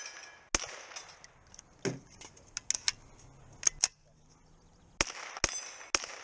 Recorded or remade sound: recorded